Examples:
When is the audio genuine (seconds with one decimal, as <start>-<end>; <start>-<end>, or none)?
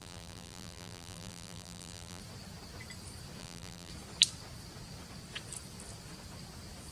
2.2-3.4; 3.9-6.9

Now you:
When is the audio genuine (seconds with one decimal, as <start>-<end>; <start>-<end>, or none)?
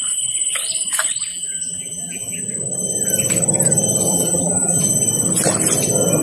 0.0-1.3; 2.4-4.1; 4.8-6.2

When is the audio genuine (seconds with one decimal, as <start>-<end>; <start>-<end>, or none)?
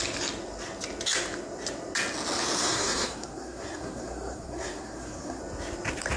0.0-2.6; 5.4-6.2